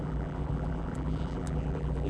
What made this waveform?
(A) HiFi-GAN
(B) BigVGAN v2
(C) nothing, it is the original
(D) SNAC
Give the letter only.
B